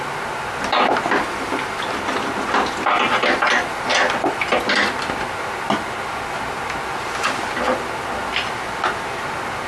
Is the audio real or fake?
real